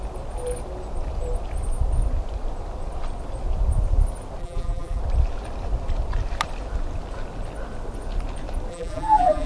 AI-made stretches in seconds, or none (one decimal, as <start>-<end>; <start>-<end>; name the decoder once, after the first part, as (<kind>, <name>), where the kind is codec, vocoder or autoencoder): 4.4-5.0 (vocoder, BigVGAN v2); 8.7-9.5